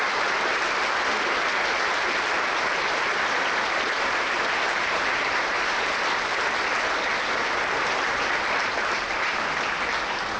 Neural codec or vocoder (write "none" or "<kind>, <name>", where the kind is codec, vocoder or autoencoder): vocoder, BigVGAN v2